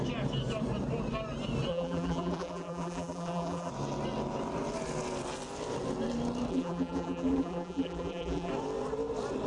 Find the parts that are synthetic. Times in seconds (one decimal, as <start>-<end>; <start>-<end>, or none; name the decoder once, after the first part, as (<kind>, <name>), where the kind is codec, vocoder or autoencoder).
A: 1.7-3.7 (vocoder, BigVGAN v2); 6.5-8.5